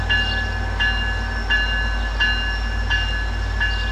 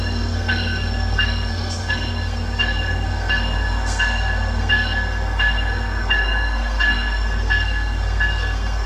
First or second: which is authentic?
first